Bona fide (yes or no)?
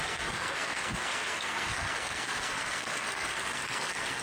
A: no